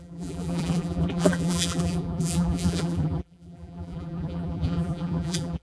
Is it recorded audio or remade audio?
remade